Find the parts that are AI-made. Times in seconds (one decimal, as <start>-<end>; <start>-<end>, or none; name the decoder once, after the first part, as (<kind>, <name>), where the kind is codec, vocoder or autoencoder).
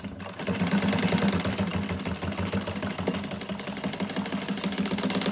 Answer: none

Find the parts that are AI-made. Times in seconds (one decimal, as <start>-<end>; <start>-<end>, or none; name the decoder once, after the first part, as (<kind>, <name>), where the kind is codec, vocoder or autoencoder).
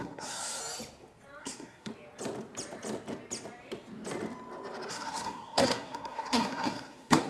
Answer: 0.0-0.6 (codec, SNAC); 1.4-1.9; 4.9-7.3